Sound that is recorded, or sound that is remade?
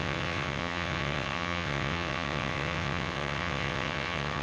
remade